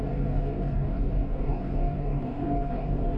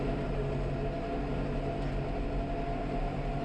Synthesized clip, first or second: first